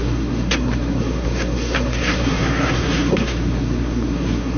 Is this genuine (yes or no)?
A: no